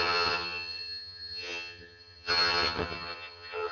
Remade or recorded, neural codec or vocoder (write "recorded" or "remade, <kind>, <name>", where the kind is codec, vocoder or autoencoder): remade, vocoder, HiFi-GAN